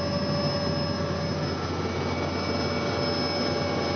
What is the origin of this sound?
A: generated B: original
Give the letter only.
B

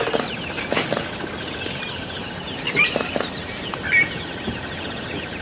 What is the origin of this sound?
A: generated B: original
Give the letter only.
B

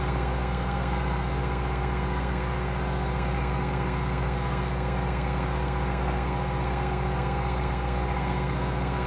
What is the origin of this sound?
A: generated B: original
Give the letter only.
A